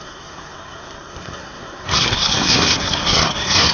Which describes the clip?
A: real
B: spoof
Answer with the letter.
B